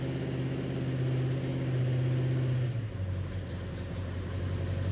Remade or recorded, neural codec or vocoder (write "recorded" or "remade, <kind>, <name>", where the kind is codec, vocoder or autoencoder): recorded